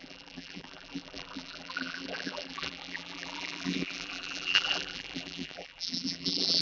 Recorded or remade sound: remade